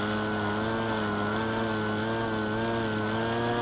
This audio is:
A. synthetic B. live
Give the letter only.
B